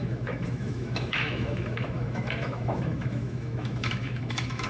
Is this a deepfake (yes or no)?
yes